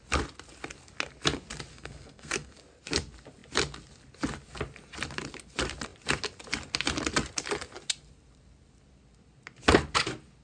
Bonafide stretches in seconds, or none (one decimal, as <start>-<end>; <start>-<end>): 0.0-1.7; 2.5-10.4